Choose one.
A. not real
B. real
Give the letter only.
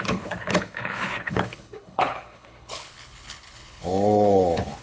A